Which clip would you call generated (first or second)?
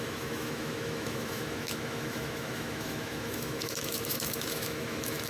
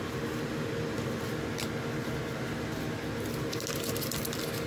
first